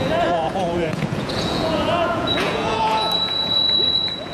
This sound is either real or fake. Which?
fake